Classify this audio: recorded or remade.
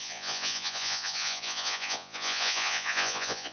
remade